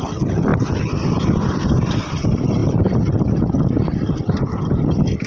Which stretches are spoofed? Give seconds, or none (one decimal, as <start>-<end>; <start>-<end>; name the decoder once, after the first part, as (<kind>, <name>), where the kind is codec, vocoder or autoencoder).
0.0-0.5 (vocoder, BigVGAN v2); 1.9-5.3